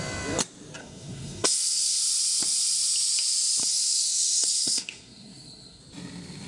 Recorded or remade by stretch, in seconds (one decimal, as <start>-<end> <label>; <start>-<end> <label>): 0.0-0.8 recorded; 0.8-2.0 remade; 2.0-3.6 recorded; 3.6-5.8 remade; 5.8-6.5 recorded